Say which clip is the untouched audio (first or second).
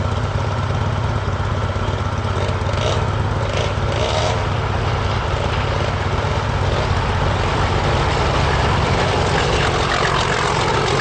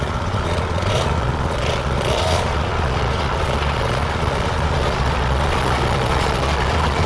first